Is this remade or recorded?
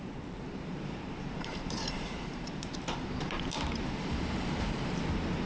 remade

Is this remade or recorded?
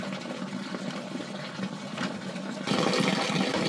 recorded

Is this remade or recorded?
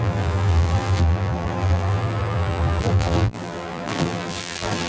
remade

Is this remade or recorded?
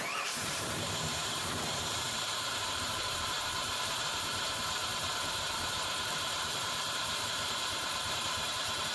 remade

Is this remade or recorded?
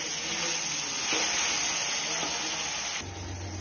recorded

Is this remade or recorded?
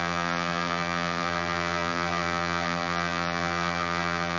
remade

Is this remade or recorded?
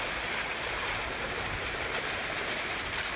remade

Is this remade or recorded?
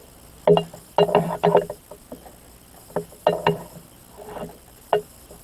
recorded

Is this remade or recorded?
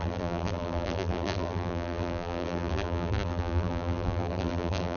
remade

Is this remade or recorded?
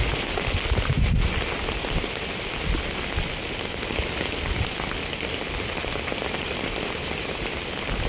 recorded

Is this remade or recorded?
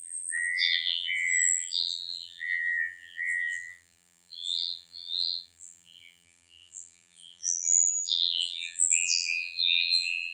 remade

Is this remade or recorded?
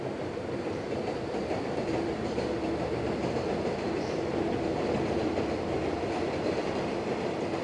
remade